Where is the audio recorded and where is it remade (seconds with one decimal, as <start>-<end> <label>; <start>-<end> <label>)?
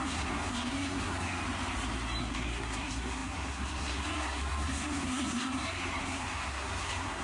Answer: 0.0-1.4 remade; 1.4-2.2 recorded; 2.2-7.2 remade